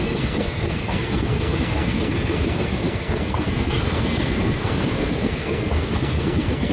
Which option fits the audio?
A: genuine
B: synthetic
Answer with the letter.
B